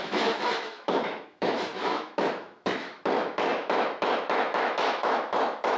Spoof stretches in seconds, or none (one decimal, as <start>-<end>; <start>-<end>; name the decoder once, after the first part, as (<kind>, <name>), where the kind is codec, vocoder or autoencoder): 0.0-5.8 (autoencoder, DAC-VAE)